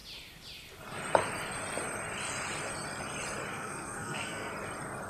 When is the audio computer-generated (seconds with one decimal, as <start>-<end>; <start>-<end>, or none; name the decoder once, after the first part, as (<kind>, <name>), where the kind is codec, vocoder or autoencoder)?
3.5-4.5 (codec, SNAC)